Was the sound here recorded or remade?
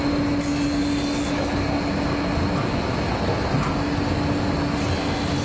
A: recorded